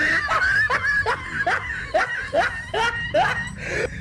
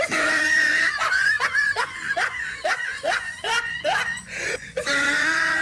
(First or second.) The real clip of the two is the first